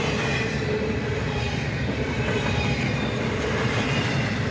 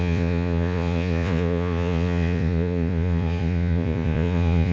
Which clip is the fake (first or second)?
second